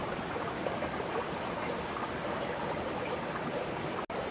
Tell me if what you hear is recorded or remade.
recorded